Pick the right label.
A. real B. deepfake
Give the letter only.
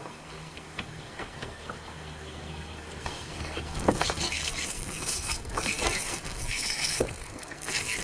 B